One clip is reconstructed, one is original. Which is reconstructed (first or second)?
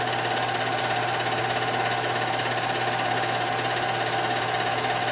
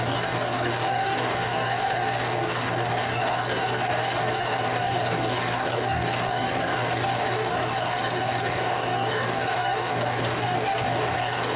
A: second